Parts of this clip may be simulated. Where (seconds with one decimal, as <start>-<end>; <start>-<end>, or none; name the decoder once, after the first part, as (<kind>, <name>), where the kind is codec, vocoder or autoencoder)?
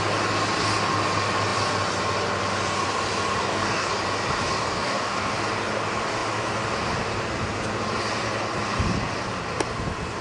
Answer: 3.4-3.9 (codec, DAC); 4.6-5.3